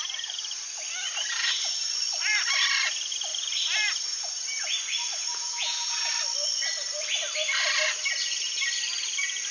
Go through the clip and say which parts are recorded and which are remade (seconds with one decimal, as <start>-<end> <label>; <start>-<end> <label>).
0.0-5.3 recorded; 5.3-6.1 remade; 6.1-9.5 recorded